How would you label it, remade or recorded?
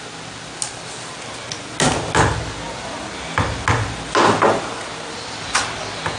recorded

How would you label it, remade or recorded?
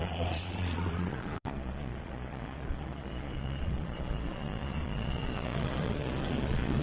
remade